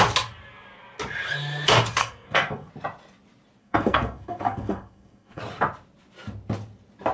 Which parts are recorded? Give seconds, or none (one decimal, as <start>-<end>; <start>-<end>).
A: 0.0-2.0; 2.7-3.6; 5.4-7.1